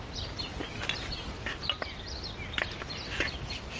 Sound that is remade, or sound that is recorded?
recorded